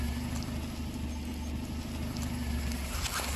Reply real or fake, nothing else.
real